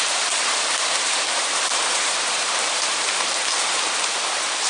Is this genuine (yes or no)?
no